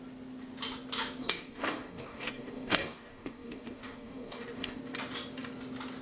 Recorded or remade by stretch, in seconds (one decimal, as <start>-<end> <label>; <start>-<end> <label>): 0.0-1.2 recorded; 1.2-4.8 remade; 4.8-6.0 recorded